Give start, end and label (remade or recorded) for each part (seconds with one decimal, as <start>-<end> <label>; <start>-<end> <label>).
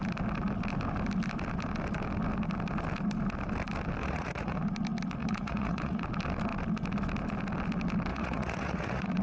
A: 0.0-4.0 recorded; 4.0-4.6 remade; 4.6-5.2 recorded; 5.2-6.0 remade; 6.0-8.1 recorded; 8.1-9.2 remade